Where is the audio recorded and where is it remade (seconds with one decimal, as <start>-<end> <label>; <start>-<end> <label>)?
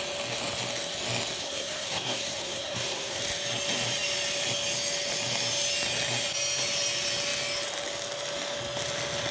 0.0-1.4 recorded; 1.4-3.2 remade; 3.2-9.3 recorded